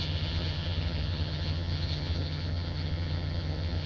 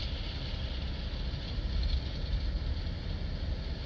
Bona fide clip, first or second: second